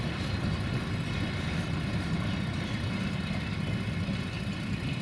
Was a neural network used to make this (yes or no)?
no